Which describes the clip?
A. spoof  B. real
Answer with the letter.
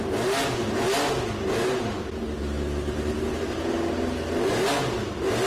B